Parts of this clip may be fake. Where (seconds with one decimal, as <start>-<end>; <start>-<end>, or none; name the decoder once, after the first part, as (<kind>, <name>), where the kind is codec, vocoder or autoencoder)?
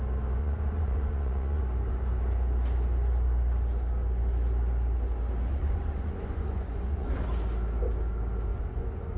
0.4-1.6 (vocoder, Vocos); 5.5-7.1; 8.5-9.2